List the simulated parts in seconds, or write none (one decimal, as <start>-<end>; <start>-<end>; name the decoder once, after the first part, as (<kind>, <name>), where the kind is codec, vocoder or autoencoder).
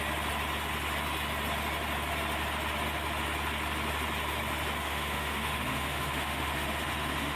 4.8-7.4 (autoencoder, DAC-VAE)